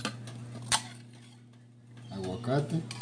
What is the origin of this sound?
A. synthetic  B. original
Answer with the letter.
B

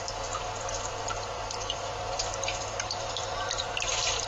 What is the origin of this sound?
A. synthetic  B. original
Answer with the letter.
A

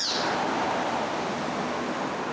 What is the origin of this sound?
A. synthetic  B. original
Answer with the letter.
B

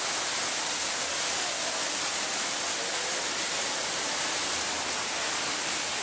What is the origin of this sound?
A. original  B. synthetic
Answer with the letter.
A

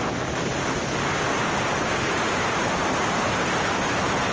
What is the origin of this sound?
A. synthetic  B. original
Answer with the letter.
B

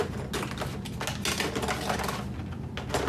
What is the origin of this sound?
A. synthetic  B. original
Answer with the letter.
B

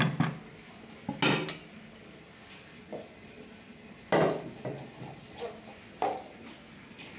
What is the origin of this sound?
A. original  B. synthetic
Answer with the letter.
A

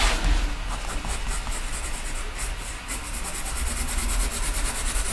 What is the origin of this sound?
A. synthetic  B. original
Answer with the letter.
B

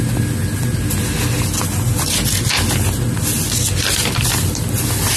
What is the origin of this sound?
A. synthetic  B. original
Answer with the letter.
B